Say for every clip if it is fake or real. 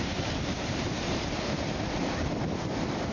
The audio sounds fake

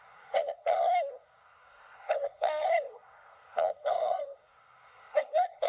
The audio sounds fake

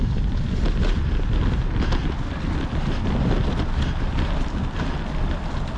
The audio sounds real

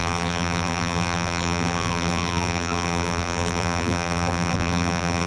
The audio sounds fake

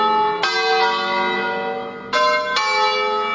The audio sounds real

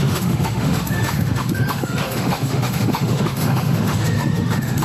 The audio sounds fake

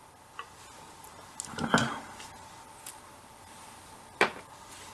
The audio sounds real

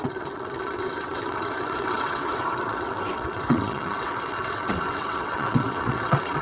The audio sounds fake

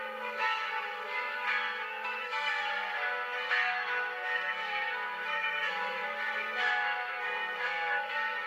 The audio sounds fake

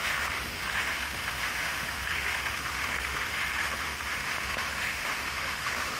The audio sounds fake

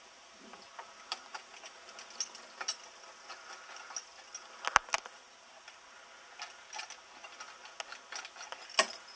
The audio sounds real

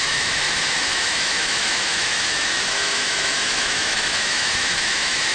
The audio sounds fake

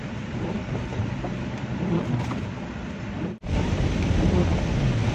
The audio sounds fake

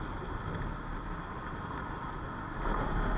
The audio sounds real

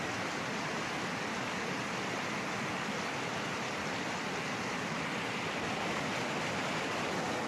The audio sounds real